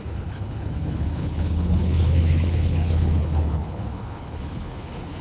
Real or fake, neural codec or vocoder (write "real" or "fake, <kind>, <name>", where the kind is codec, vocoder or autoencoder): fake, codec, HILCodec